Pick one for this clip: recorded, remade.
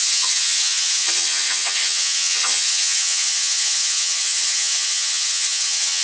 remade